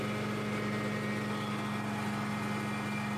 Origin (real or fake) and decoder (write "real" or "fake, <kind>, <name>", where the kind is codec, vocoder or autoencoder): real